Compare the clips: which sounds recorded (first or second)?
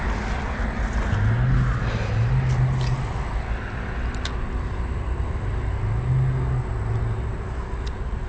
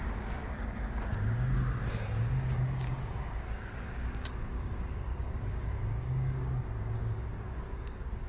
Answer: first